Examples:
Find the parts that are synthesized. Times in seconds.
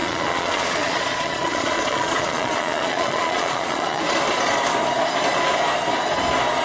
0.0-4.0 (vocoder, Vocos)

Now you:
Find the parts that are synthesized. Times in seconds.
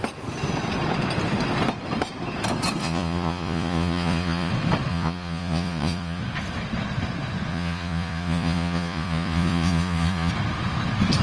2.8-4.5 (vocoder, Vocos); 4.9-6.2; 7.5-10.3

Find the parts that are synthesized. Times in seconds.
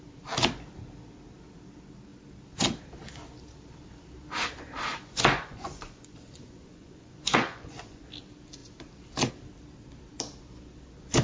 4.9-8.0 (vocoder, Vocos)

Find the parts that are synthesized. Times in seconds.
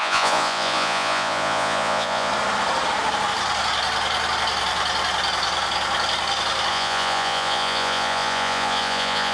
0.0-2.3 (vocoder, Vocos); 6.7-9.3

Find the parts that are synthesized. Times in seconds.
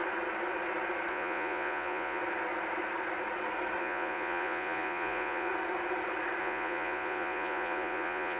1.1-2.2 (vocoder, Vocos); 3.8-5.5; 6.4-8.4